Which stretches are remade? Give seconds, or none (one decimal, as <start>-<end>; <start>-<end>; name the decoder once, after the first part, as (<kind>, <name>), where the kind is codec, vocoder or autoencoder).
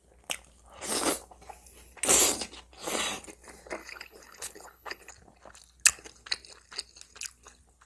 3.8-5.1 (codec, HILCodec)